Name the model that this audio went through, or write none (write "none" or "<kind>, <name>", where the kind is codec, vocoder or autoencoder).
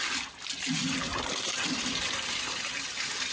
none